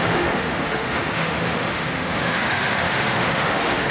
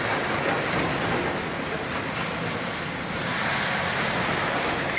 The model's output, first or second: first